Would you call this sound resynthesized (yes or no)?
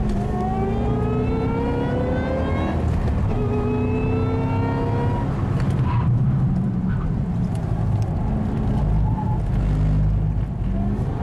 no